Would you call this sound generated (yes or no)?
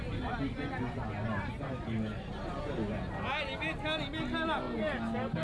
no